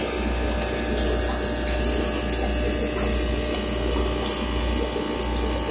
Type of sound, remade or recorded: recorded